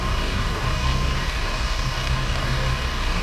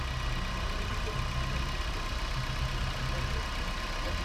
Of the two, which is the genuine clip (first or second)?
second